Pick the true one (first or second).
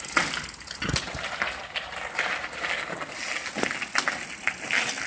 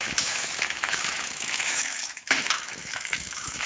first